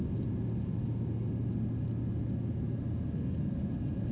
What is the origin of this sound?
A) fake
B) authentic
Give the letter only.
B